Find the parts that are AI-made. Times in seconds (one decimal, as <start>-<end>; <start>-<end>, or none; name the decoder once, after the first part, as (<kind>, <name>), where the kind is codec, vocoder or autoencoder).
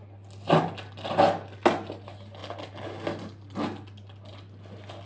none